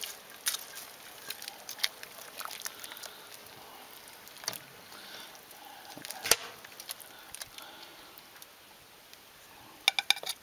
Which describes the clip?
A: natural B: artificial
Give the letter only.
A